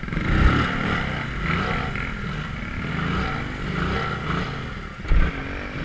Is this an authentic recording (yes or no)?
yes